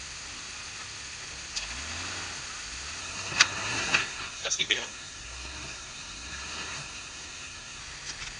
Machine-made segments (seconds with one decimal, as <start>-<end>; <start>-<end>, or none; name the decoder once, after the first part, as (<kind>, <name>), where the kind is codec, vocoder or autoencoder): 3.0-7.8 (codec, SNAC)